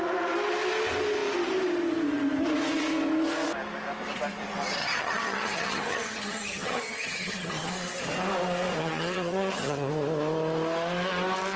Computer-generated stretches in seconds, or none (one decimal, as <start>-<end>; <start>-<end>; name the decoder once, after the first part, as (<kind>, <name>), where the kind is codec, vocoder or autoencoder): 4.8-7.7 (vocoder, HiFi-GAN); 8.8-9.9